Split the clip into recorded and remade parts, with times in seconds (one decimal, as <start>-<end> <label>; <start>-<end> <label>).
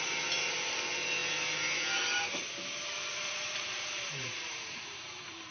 0.0-3.1 recorded; 3.1-5.5 remade